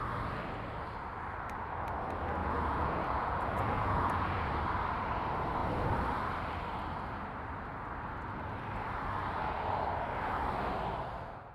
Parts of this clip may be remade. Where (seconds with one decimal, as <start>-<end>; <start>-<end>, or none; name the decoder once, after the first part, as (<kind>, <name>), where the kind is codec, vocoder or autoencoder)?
2.4-4.5 (vocoder, Vocos)